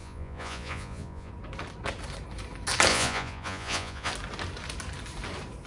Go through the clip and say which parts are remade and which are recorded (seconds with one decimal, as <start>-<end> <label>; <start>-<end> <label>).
0.0-1.3 remade; 1.3-2.9 recorded; 2.9-4.1 remade; 4.1-5.7 recorded